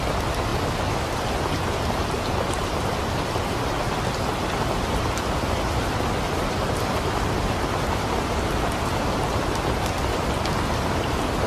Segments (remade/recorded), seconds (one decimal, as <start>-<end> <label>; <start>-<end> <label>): 0.0-11.5 recorded